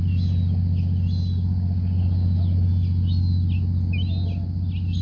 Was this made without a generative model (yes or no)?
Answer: yes